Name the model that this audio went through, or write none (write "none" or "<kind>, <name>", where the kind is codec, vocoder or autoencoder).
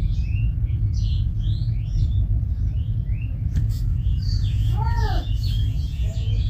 vocoder, Vocos